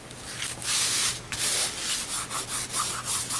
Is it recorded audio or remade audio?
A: recorded